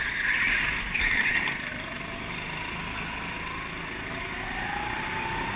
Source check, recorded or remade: recorded